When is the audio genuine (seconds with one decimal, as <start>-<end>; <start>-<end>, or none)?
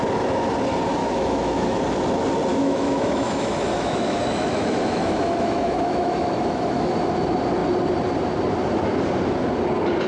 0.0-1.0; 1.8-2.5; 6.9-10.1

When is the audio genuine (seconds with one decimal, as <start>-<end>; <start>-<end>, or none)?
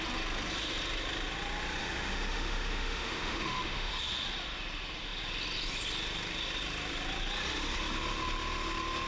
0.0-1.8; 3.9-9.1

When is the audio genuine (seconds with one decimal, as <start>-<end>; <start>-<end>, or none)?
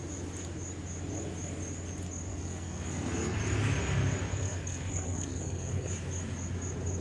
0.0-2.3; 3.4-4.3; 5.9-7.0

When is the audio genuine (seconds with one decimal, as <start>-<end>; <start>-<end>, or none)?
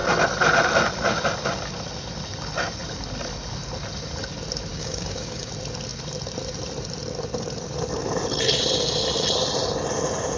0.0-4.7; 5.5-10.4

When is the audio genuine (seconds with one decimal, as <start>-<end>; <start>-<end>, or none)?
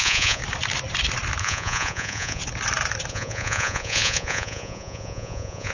0.4-1.4; 2.4-3.1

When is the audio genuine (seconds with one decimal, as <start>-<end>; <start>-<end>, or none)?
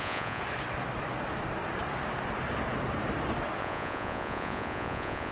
0.4-3.6